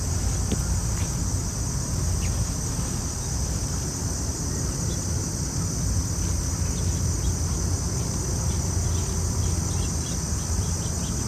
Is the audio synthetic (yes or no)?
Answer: no